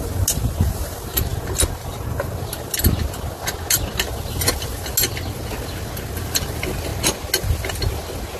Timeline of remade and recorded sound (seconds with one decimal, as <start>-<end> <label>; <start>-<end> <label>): 0.0-8.4 recorded